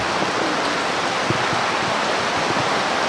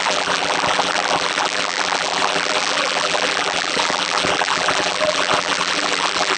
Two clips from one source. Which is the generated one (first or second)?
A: second